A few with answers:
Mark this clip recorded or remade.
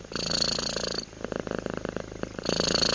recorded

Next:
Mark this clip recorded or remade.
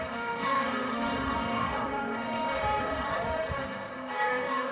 remade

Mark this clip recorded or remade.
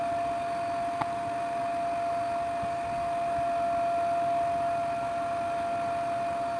recorded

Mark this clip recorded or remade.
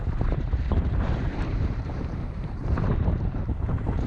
remade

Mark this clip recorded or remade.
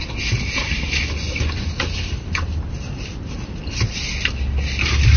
recorded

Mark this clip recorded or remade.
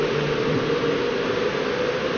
recorded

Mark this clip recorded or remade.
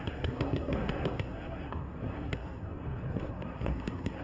remade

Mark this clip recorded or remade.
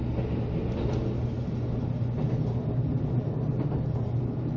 recorded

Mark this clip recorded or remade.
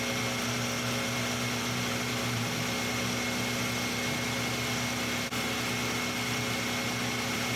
recorded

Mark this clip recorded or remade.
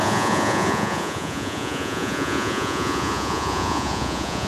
remade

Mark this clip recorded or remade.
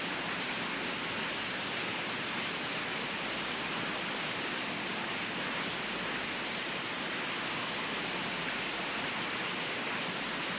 recorded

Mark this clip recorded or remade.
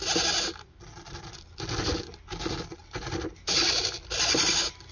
recorded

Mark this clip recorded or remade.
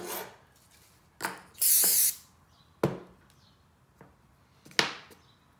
recorded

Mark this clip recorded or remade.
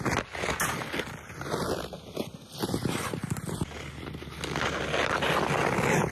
recorded